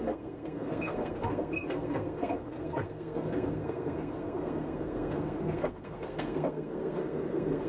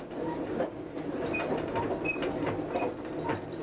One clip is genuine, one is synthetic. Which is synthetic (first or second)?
first